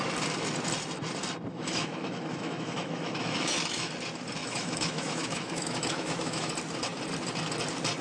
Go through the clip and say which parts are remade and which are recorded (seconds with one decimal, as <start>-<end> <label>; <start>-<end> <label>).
0.0-1.5 recorded; 1.5-3.9 remade; 3.9-4.4 recorded; 4.4-6.5 remade; 6.5-8.0 recorded